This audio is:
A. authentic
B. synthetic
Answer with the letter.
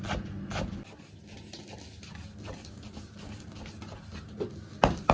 A